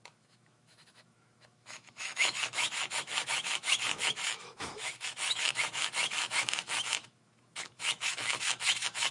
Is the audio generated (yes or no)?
yes